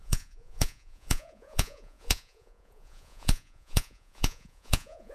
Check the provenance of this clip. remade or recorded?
remade